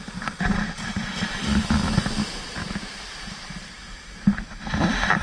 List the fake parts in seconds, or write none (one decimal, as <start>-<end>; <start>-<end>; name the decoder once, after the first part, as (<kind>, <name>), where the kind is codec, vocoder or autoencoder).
0.0-1.5 (vocoder, BigVGAN v2); 4.6-5.2